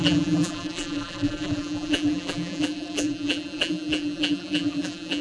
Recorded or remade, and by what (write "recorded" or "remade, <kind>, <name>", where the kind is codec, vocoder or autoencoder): remade, vocoder, BigVGAN v2